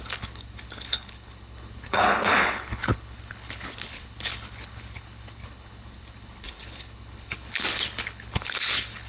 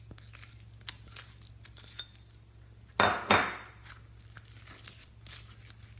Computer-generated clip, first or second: first